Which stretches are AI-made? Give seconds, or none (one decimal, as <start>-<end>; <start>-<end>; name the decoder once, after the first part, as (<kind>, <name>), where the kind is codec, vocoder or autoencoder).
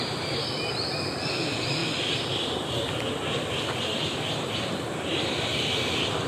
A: 0.0-6.3 (vocoder, BigVGAN v2)